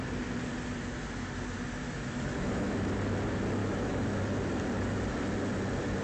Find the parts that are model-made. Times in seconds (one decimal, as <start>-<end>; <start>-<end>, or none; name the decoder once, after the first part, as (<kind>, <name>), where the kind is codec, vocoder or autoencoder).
1.8-2.9 (autoencoder, DAC-VAE); 3.6-4.2